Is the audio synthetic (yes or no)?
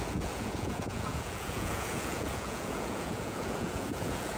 yes